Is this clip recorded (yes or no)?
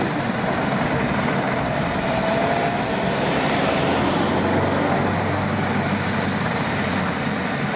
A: yes